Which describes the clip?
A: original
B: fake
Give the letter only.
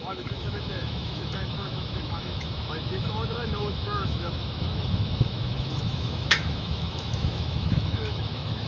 B